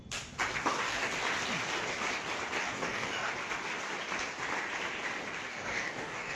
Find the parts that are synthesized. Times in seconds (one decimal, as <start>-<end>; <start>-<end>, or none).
0.6-1.1; 2.6-3.3; 5.5-6.4